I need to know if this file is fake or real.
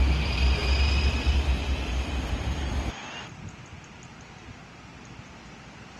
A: real